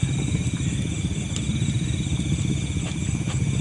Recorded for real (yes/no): yes